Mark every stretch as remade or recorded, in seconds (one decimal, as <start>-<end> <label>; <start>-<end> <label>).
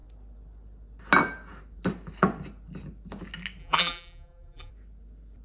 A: 0.0-3.6 recorded; 3.6-4.7 remade; 4.7-5.4 recorded